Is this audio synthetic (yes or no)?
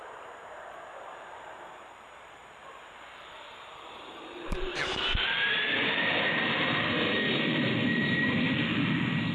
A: yes